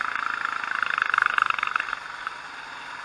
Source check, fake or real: real